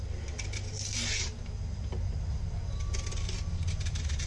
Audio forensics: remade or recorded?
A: recorded